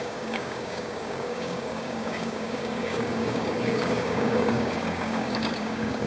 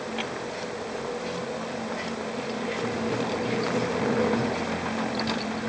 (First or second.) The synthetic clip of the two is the first